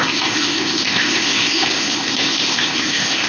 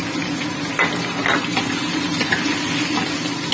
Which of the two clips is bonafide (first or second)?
second